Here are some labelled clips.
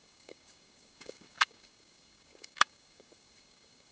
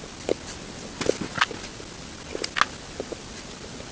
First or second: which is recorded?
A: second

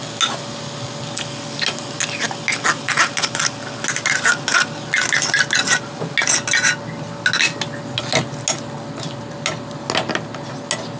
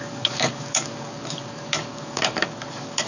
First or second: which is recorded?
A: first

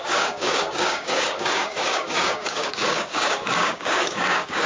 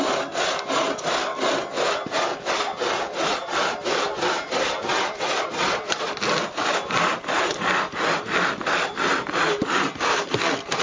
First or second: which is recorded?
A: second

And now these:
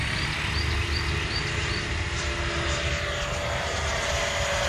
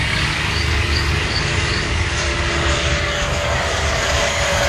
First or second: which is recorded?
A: first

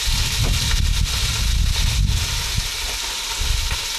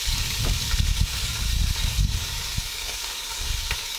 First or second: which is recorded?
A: first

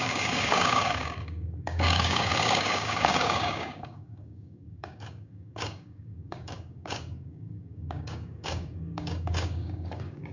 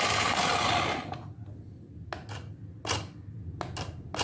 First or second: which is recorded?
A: second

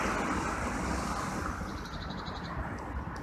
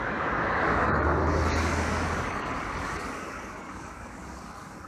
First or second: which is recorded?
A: first